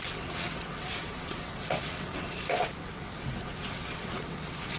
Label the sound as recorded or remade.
remade